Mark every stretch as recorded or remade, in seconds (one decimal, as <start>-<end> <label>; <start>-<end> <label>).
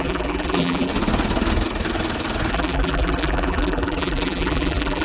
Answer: 0.0-0.9 remade; 0.9-2.5 recorded; 2.5-5.0 remade